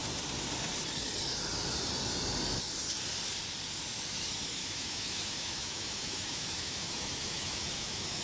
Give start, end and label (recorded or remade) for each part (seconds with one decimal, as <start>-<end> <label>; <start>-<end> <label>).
0.0-4.6 recorded; 4.6-8.2 remade